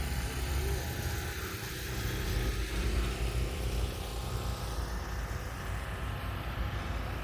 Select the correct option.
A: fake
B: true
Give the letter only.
B